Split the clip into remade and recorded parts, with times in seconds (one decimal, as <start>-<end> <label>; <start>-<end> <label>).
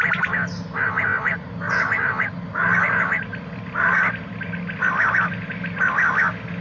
0.0-6.6 recorded